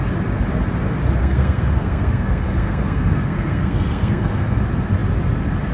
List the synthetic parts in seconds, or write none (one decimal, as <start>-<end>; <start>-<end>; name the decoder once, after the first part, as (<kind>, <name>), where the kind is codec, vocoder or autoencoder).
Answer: 1.2-4.6 (codec, SNAC)

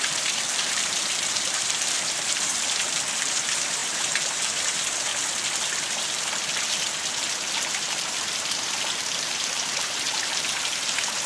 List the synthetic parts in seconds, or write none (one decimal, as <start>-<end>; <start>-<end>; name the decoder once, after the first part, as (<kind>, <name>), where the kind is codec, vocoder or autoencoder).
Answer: 0.0-5.1 (vocoder, BigVGAN v2); 7.7-11.3

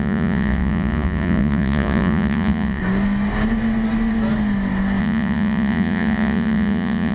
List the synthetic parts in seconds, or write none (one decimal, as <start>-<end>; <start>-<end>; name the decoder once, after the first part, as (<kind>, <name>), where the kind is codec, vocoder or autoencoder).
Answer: 0.0-2.8 (vocoder, Vocos); 5.0-7.1